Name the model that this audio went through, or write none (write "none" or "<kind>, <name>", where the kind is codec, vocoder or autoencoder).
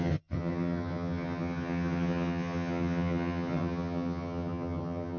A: vocoder, HiFi-GAN